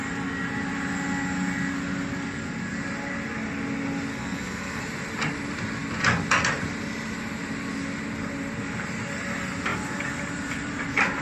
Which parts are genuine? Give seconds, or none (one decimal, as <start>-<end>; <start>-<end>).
0.0-4.1; 4.8-11.2